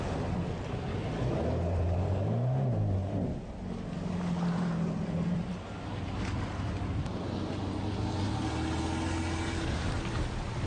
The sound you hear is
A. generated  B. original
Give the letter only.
B